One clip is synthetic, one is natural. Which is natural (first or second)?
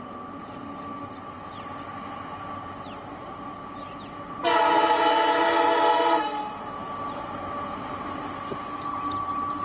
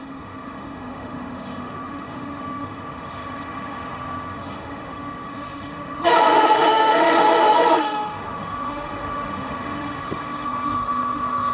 first